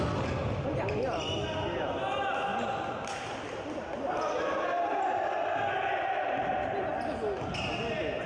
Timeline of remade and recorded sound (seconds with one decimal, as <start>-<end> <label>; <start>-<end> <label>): 0.0-8.3 recorded